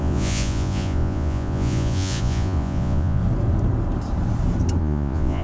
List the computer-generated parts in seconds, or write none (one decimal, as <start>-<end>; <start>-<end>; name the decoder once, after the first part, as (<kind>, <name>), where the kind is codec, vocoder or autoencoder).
0.0-3.2 (vocoder, Vocos); 4.8-5.4